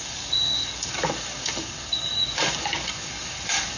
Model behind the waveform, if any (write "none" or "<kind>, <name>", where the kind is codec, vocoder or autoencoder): codec, DAC